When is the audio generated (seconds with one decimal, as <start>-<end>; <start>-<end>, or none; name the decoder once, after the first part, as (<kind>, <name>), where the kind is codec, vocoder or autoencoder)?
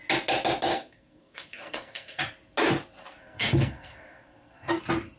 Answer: 0.7-2.2 (codec, SNAC); 3.0-4.8